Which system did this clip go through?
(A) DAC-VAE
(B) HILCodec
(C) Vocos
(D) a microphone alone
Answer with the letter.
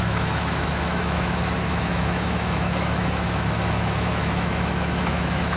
A